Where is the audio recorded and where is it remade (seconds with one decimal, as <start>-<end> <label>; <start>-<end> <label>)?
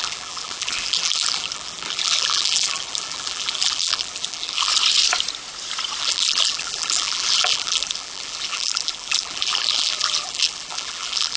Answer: 0.0-4.7 remade; 4.7-6.0 recorded; 6.0-11.4 remade